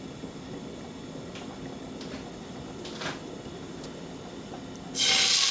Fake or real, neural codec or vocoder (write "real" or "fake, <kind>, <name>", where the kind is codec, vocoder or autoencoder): real